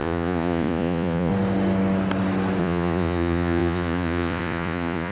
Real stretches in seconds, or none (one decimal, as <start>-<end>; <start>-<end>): 1.3-2.6